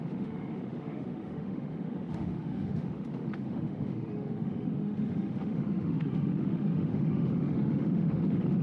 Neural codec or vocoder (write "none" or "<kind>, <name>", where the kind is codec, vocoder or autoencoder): autoencoder, DAC-VAE